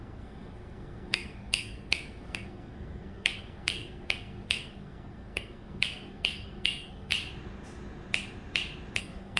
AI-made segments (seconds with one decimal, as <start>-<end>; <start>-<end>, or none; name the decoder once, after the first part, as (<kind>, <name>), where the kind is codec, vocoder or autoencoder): 0.0-7.1 (codec, SNAC); 9.0-9.4